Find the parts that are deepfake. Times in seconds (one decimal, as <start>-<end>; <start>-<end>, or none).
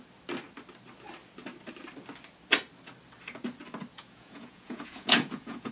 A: 3.9-5.7